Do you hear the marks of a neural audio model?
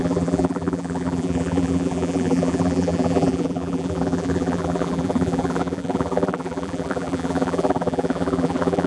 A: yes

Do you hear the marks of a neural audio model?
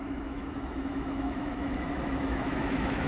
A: yes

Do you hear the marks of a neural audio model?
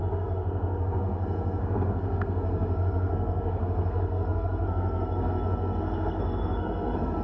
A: yes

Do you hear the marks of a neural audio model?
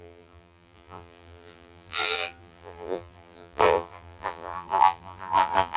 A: yes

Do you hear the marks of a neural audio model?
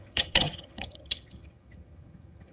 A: yes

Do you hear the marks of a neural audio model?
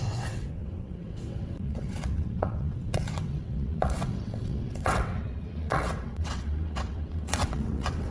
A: yes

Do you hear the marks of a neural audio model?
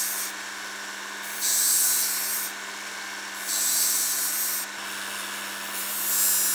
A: no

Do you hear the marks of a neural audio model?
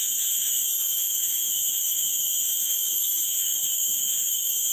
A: yes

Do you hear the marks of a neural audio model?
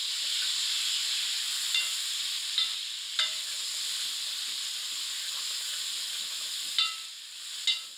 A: no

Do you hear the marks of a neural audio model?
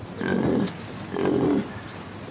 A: no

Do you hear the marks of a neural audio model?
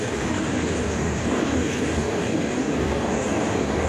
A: yes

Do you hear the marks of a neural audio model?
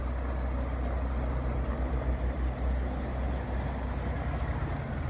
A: no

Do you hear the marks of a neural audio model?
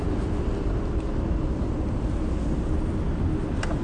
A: no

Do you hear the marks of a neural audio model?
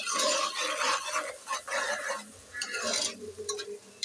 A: yes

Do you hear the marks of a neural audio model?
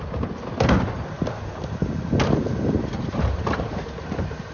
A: no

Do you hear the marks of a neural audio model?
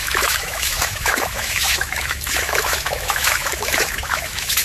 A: yes